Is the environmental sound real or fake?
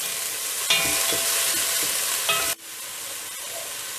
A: real